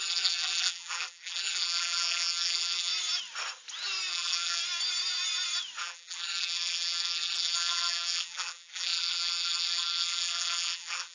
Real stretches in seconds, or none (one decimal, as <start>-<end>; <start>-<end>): 2.9-4.1; 4.6-5.8